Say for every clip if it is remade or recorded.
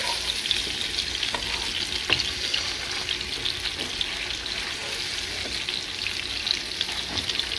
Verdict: recorded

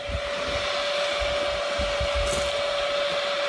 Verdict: recorded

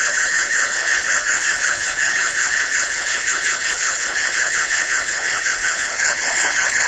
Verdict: remade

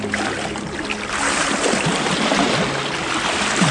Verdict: recorded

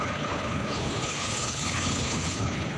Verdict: remade